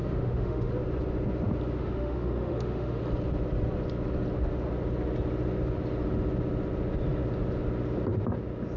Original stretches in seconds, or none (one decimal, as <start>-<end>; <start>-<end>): 0.7-1.8; 3.0-8.8